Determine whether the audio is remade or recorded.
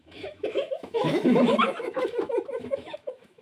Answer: remade